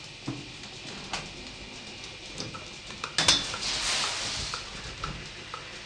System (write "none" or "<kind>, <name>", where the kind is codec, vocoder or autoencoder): none